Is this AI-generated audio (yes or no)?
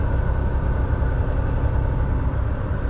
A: no